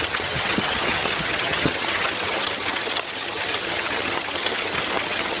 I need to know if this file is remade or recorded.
remade